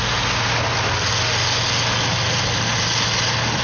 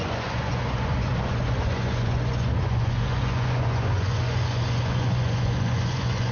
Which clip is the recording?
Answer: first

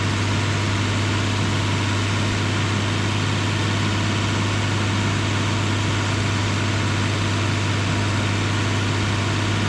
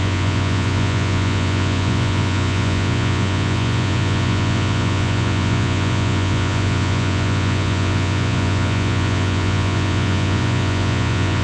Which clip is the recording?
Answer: first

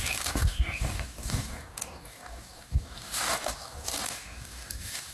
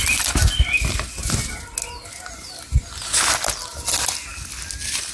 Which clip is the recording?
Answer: second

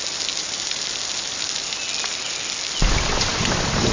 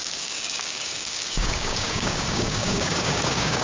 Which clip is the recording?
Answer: first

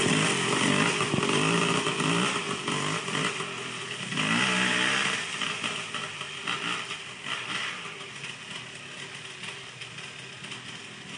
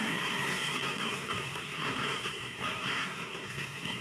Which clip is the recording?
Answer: first